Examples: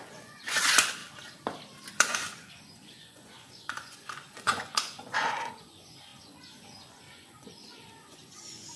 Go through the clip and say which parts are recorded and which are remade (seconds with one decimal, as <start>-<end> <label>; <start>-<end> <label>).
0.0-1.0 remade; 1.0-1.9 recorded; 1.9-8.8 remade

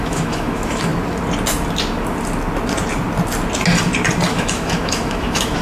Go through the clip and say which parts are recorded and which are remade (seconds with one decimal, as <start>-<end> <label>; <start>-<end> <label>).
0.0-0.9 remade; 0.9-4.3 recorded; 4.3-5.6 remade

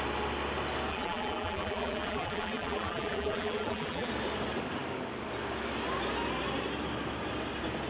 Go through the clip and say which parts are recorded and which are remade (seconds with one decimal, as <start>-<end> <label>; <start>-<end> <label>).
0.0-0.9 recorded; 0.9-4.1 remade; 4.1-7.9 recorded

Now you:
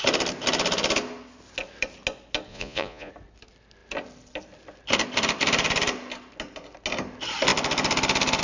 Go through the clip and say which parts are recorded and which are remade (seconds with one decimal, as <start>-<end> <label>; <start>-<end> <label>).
0.0-2.5 recorded; 2.5-3.1 remade; 3.1-8.4 recorded

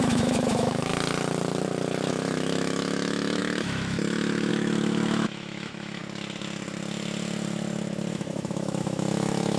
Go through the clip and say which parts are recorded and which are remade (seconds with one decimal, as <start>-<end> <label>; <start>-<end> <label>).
0.0-0.9 remade; 0.9-2.1 recorded; 2.1-6.0 remade; 6.0-8.1 recorded; 8.1-9.6 remade

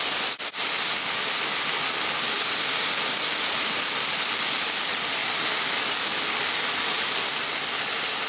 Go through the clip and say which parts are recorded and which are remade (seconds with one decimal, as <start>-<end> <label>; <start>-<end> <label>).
0.0-8.3 recorded

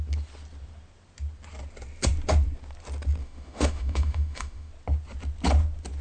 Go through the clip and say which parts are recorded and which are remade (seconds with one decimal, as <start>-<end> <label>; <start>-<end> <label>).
0.0-3.2 recorded; 3.2-4.7 remade; 4.7-6.0 recorded